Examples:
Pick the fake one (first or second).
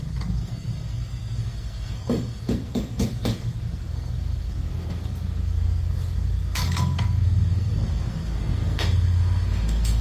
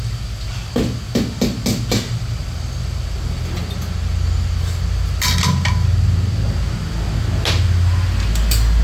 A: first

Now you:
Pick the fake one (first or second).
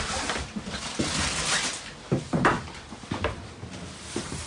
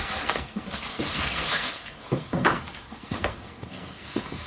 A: second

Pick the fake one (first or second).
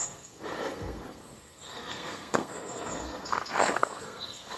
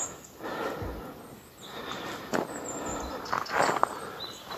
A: first